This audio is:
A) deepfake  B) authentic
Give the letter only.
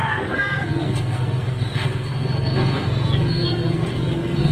A